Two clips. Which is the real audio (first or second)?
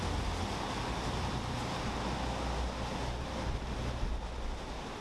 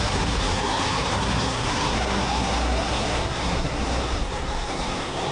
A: first